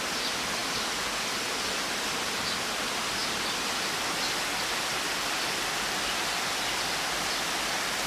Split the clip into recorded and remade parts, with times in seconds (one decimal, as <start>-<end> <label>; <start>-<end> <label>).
0.0-8.1 recorded